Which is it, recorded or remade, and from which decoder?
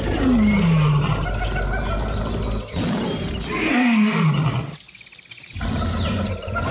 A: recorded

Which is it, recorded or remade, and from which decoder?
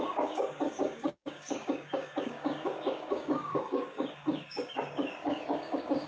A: remade, codec, DAC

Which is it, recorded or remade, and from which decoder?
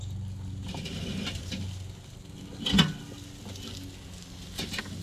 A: recorded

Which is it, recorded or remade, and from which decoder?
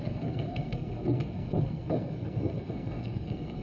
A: remade, codec, SNAC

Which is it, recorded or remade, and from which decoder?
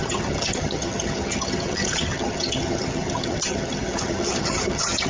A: remade, vocoder, HiFi-GAN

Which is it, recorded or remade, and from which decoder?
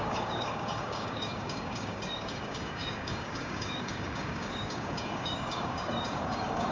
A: remade, codec, DAC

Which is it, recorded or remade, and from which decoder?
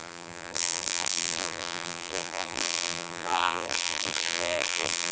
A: remade, vocoder, BigVGAN v2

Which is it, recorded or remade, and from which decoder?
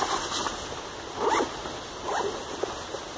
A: recorded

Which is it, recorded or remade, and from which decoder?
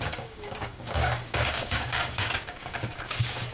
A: remade, codec, DAC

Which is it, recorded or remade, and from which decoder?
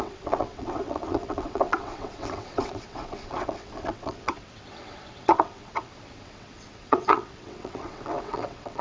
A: remade, vocoder, WaveNeXt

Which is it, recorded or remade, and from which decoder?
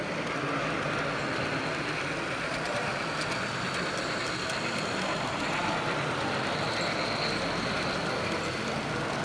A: recorded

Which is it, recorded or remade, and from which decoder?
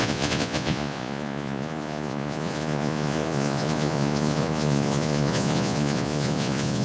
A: remade, vocoder, Vocos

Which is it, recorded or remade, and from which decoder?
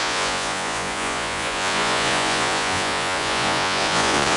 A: remade, vocoder, Vocos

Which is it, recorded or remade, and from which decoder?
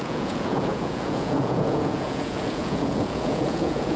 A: remade, vocoder, Vocos